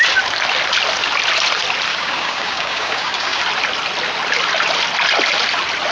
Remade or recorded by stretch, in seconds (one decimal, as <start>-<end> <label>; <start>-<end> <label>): 0.0-1.9 recorded; 1.9-3.4 remade; 3.4-5.9 recorded